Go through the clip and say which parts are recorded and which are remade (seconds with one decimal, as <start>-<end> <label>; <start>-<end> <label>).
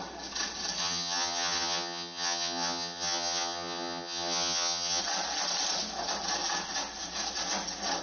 0.0-0.8 recorded; 0.8-5.0 remade; 5.0-8.0 recorded